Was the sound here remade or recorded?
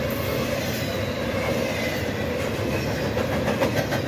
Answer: recorded